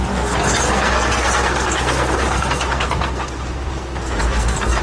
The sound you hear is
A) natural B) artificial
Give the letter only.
B